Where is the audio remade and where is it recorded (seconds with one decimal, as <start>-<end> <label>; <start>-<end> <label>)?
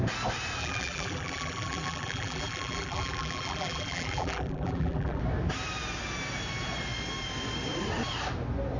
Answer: 0.0-0.6 recorded; 0.6-5.2 remade; 5.2-8.8 recorded